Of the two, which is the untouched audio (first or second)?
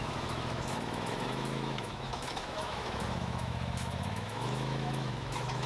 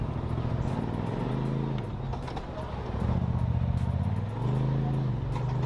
second